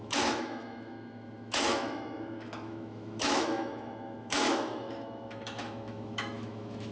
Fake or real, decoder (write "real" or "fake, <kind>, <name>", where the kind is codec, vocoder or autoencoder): fake, autoencoder, DAC-VAE